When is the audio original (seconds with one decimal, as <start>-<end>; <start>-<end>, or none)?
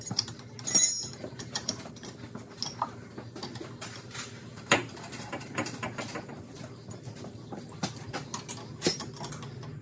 0.0-1.0; 1.9-3.8; 6.3-9.8